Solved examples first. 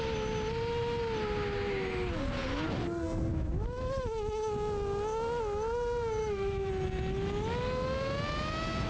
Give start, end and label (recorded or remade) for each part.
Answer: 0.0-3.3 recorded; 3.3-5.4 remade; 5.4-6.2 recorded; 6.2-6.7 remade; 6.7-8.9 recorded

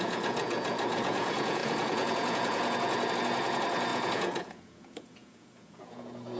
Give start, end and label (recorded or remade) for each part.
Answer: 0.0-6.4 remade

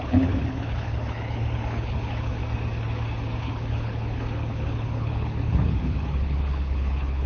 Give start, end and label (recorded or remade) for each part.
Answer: 0.0-2.4 remade; 2.4-3.4 recorded; 3.4-7.3 remade

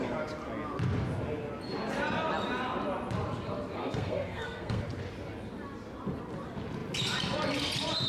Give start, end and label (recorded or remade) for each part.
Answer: 0.0-3.8 recorded; 3.8-4.8 remade; 4.8-8.1 recorded

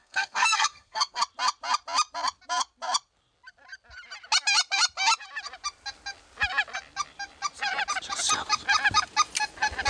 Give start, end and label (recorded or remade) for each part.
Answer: 0.0-1.2 remade; 1.2-9.9 recorded

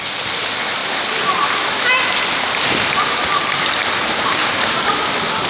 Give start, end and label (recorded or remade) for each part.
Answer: 0.0-5.5 recorded

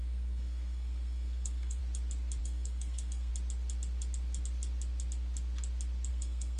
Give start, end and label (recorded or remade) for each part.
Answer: 0.0-1.8 remade; 1.8-2.4 recorded; 2.4-3.3 remade; 3.3-6.1 recorded; 6.1-6.6 remade

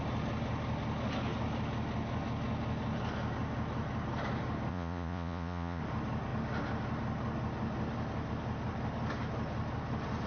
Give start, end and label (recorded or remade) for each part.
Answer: 0.0-4.7 recorded; 4.7-5.8 remade; 5.8-10.3 recorded